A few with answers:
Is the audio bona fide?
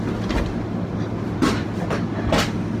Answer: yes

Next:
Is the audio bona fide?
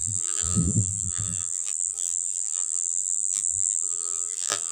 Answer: no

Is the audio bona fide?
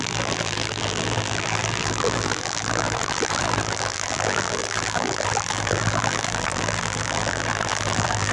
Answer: no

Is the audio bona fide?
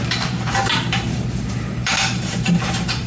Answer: no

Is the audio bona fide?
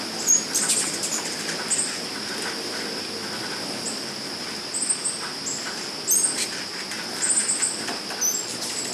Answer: yes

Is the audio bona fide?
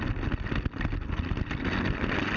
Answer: yes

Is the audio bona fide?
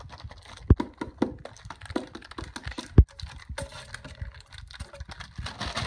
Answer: yes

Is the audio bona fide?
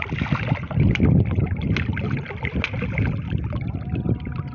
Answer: yes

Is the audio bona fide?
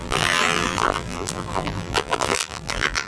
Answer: no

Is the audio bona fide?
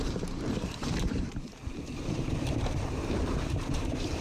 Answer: no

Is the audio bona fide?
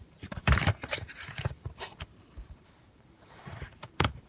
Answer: no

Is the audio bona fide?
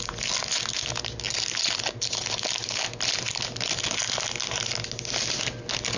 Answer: yes